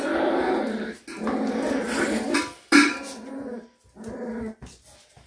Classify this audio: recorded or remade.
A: recorded